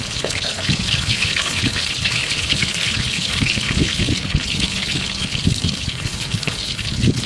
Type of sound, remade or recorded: remade